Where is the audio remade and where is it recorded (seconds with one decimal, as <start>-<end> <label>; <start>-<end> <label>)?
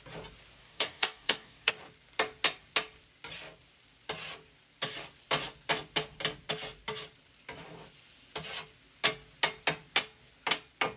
0.0-0.6 recorded; 0.6-1.7 remade; 1.7-11.0 recorded